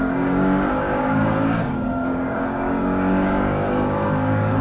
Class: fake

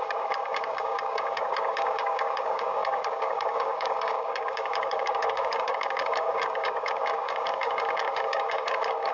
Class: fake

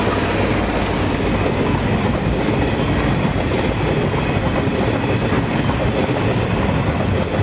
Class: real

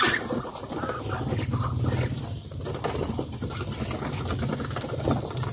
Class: real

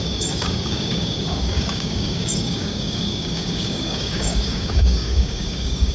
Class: fake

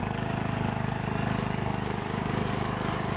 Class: fake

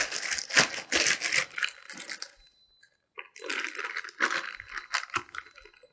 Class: real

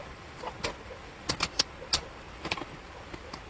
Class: real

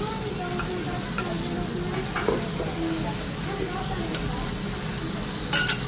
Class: real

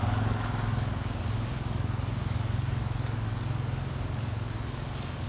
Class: fake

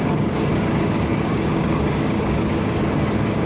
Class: fake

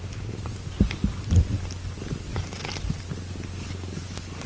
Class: real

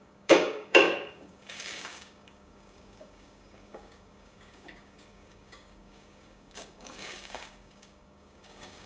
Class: fake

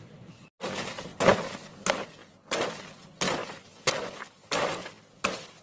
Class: real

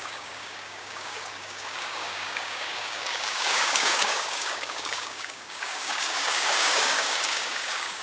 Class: fake